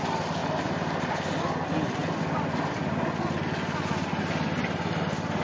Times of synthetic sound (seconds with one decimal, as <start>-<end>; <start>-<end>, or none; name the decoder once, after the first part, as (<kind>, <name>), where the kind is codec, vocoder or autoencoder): none